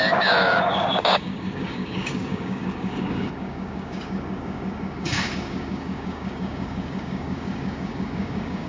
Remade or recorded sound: remade